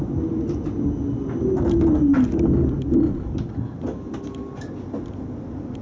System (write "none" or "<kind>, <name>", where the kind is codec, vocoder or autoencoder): none